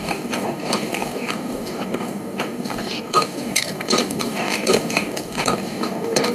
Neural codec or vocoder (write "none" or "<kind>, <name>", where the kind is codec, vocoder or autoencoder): codec, DAC